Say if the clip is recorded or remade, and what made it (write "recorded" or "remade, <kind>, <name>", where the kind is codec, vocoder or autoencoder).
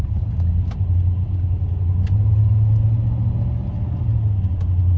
recorded